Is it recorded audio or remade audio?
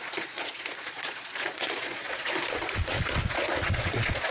remade